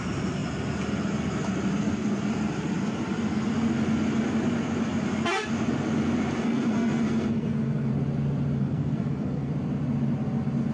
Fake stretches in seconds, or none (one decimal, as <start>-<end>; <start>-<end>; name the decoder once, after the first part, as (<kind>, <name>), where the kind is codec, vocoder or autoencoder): 6.4-7.9 (codec, SNAC); 8.6-9.5